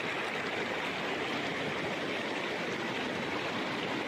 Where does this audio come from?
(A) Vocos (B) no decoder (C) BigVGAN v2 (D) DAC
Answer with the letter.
B